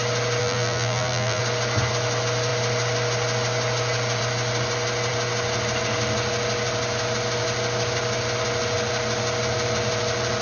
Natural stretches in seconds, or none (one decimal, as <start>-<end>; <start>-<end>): 0.0-0.4; 1.4-10.4